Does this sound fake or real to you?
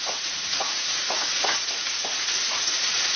fake